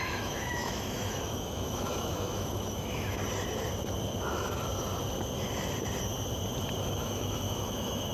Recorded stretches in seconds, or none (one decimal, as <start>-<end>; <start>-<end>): 3.2-6.9